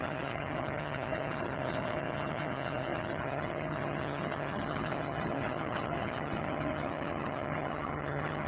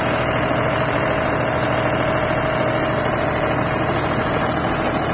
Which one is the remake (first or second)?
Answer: first